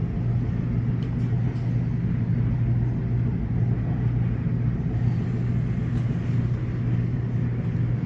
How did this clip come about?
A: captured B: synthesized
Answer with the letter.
A